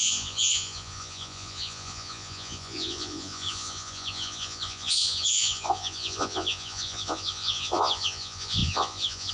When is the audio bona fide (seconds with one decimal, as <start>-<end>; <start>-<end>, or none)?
none